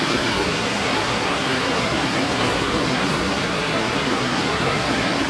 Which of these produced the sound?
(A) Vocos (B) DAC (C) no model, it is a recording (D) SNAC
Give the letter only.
D